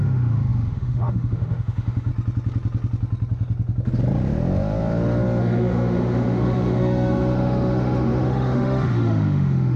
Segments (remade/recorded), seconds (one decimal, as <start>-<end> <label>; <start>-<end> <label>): 0.0-2.1 remade; 2.1-5.4 recorded; 5.4-9.8 remade